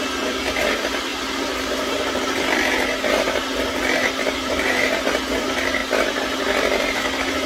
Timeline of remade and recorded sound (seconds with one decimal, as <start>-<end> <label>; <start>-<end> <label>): 0.0-1.1 recorded; 1.1-2.2 remade; 2.2-4.0 recorded; 4.0-5.0 remade; 5.0-7.5 recorded